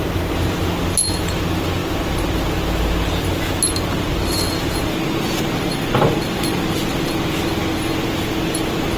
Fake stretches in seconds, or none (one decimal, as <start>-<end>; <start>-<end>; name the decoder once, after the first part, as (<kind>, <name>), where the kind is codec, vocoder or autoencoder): none